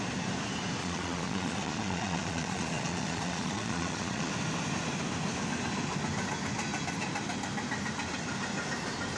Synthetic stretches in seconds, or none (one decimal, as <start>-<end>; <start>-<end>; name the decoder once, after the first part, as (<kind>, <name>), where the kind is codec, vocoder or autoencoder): 0.8-4.3 (vocoder, Vocos)